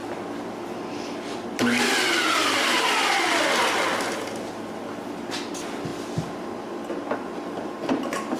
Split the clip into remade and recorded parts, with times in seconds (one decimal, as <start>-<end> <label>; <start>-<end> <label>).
0.0-8.4 recorded